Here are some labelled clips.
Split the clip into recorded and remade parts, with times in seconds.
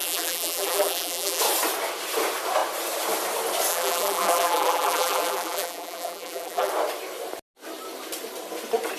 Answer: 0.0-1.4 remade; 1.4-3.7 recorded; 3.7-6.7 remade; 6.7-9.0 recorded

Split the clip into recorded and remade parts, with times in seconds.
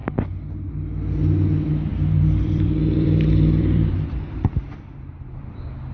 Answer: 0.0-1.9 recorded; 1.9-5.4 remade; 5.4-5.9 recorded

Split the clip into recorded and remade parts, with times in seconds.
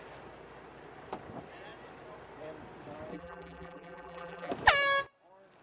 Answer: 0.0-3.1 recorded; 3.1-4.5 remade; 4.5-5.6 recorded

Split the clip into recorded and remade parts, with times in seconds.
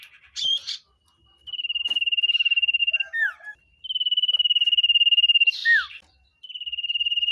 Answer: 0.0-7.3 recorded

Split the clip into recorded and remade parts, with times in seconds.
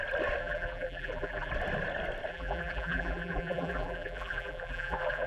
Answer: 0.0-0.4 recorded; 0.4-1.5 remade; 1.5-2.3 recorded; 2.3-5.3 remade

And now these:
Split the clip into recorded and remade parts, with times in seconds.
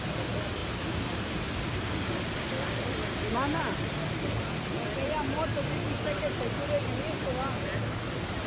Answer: 0.0-8.5 recorded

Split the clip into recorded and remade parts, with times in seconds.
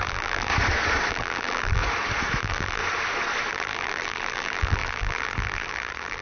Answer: 0.0-0.5 remade; 0.5-1.1 recorded; 1.1-1.8 remade; 1.8-2.4 recorded; 2.4-2.8 remade; 2.8-3.5 recorded; 3.5-6.2 remade